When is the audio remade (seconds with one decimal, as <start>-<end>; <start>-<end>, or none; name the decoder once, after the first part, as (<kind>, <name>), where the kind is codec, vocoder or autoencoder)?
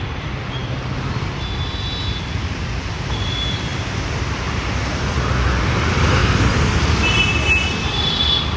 none